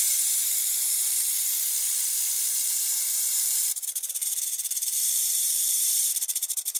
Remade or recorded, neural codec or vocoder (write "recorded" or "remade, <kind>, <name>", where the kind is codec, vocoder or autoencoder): remade, vocoder, BigVGAN v2